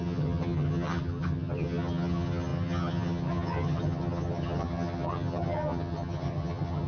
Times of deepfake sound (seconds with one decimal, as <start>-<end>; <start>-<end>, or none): 0.0-6.9